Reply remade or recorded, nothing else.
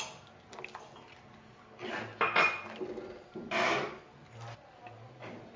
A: recorded